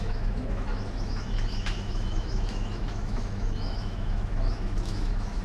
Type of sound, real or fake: fake